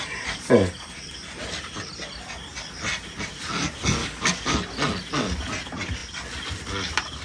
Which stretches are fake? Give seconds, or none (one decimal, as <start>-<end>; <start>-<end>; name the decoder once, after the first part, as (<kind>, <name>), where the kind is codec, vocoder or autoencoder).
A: 4.0-4.5 (codec, DAC)